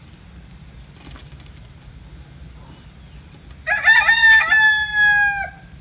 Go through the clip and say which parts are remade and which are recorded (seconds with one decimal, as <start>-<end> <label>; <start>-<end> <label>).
0.0-5.8 recorded